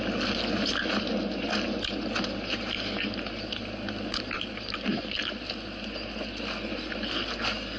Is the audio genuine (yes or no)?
yes